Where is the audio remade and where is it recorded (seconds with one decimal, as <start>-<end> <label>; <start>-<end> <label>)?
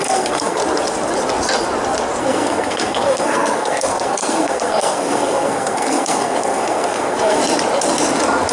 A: 0.0-0.6 remade; 0.6-2.2 recorded; 2.2-7.4 remade; 7.4-8.5 recorded